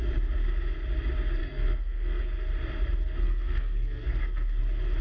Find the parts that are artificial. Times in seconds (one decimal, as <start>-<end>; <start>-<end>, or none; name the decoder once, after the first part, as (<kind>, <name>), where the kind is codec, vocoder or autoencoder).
1.4-2.2 (codec, SNAC); 3.2-4.6